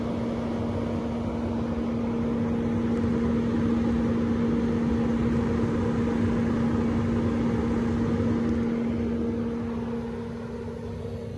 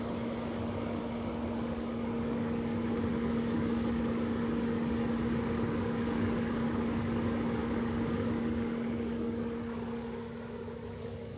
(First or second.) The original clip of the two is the first